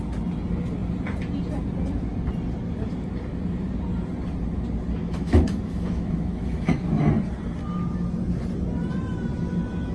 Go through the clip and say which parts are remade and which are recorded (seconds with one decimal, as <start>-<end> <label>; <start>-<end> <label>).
0.0-5.0 recorded; 5.0-7.0 remade; 7.0-9.9 recorded